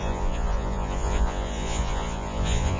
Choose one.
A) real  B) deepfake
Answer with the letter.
B